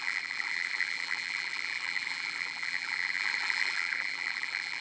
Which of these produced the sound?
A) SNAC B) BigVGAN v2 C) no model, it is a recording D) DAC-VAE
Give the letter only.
B